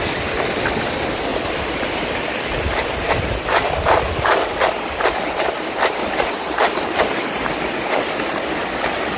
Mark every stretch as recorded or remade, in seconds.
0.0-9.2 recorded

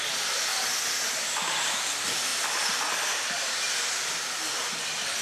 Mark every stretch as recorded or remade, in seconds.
0.0-5.2 recorded

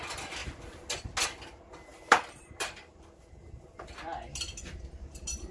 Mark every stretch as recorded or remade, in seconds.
0.0-1.9 recorded; 1.9-3.5 remade; 3.5-5.5 recorded